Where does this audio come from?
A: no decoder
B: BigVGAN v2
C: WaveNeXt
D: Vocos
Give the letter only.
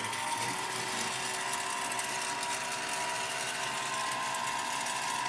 A